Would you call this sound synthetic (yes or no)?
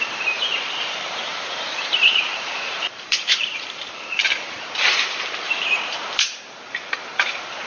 yes